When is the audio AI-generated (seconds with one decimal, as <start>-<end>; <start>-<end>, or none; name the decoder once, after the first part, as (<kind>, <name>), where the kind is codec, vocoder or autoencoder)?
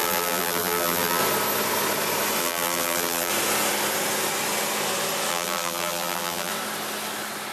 0.0-1.2 (vocoder, BigVGAN v2); 2.4-3.3; 5.3-6.5